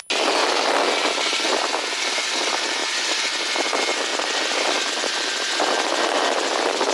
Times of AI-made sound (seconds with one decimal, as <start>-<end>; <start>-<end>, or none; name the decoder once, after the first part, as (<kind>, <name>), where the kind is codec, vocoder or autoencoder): 2.8-3.4 (vocoder, BigVGAN v2); 4.1-4.9